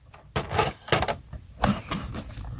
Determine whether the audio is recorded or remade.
recorded